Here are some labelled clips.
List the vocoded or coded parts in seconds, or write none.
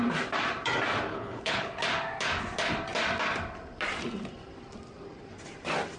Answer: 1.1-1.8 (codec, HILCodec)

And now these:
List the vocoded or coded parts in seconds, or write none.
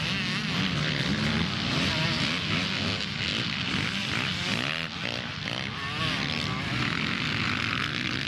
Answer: none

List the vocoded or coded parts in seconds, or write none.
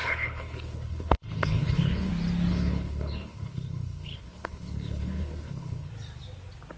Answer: 0.0-2.1 (codec, HILCodec); 2.5-5.9